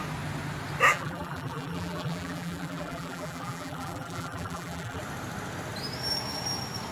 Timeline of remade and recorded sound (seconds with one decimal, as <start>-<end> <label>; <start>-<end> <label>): 0.0-0.9 recorded; 0.9-5.0 remade; 5.0-6.9 recorded